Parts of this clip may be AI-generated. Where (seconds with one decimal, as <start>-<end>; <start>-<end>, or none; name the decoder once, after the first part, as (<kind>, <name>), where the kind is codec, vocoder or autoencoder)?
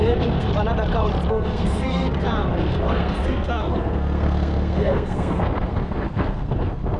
0.0-0.5 (codec, SNAC); 1.3-7.0